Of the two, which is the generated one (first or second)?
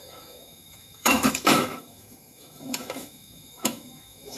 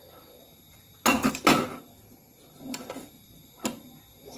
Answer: first